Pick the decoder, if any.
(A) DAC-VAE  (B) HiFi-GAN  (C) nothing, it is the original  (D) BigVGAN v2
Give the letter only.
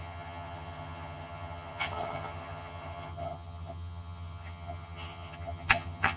B